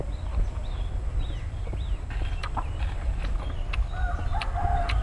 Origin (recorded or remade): recorded